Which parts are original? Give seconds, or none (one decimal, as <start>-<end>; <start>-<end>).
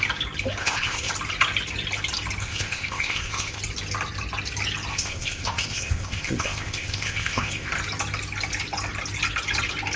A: 0.0-0.6; 1.1-2.4; 3.6-4.9; 7.7-10.0